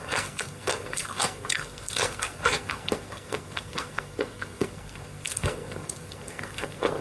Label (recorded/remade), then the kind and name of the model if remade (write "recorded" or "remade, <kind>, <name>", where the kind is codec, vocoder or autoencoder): remade, codec, SNAC